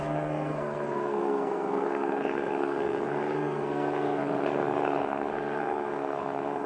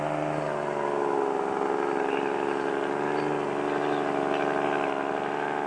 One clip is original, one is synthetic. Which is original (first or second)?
second